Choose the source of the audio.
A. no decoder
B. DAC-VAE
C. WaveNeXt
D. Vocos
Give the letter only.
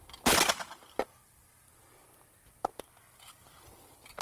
A